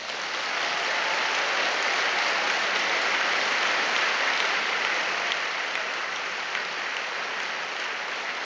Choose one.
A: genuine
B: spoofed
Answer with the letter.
A